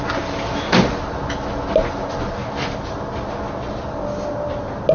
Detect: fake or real real